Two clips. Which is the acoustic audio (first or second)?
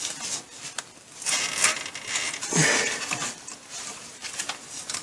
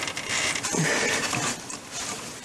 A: first